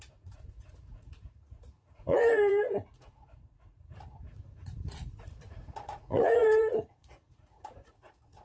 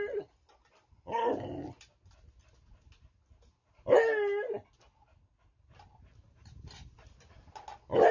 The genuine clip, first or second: second